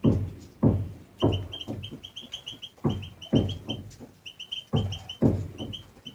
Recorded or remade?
recorded